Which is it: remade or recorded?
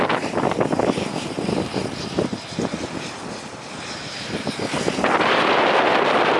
recorded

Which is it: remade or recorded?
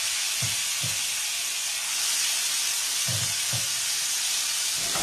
recorded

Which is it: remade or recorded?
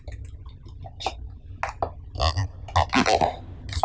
recorded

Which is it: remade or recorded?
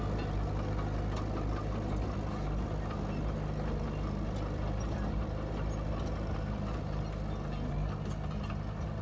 recorded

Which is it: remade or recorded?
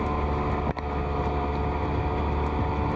recorded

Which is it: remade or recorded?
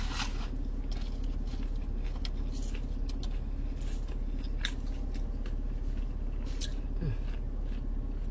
recorded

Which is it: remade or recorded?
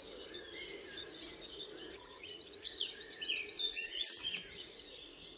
remade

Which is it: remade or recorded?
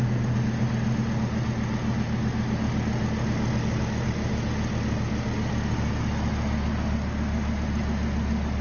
recorded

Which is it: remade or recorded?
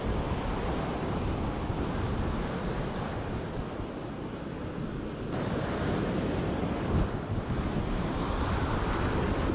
recorded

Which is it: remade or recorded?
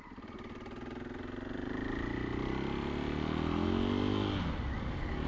recorded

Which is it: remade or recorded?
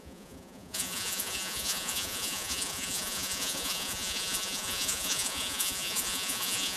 remade